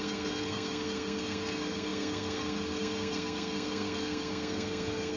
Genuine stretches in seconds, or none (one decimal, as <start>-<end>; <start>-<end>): none

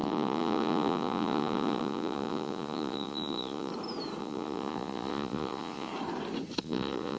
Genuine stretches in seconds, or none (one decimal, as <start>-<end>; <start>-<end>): 3.7-4.2; 5.9-6.6

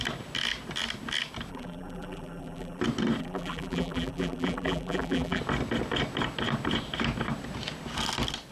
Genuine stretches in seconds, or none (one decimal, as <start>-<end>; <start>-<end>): 0.0-1.5; 2.8-3.2; 5.4-8.5

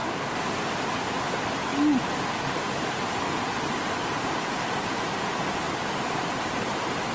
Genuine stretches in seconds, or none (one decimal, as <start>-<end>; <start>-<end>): 0.0-7.1

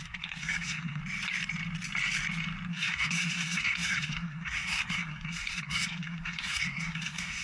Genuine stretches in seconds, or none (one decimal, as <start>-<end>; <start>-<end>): 1.0-2.7

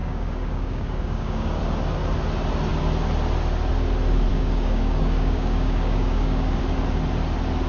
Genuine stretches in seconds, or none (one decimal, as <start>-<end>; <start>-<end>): 1.6-4.3; 6.6-7.7

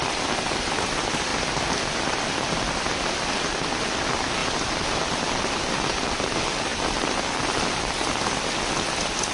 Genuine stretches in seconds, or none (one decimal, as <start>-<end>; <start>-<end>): 0.0-9.3